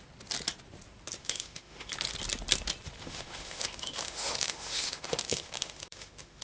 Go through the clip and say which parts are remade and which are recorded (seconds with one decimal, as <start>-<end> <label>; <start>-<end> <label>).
0.0-1.2 recorded; 1.2-1.9 remade; 1.9-3.0 recorded; 3.0-6.4 remade